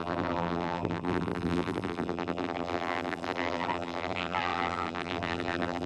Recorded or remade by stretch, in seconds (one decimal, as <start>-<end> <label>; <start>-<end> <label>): 0.0-5.9 remade